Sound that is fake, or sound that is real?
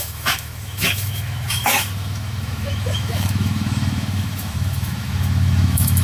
fake